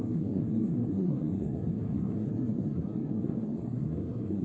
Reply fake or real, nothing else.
fake